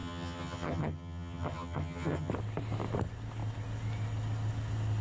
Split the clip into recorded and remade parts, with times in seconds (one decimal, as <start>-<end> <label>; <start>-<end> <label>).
0.0-2.3 remade; 2.3-5.0 recorded